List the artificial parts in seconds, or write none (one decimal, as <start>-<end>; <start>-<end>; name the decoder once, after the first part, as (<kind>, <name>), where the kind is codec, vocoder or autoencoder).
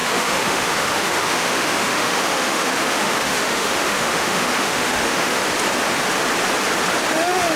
0.0-5.4 (autoencoder, DAC-VAE); 7.1-7.6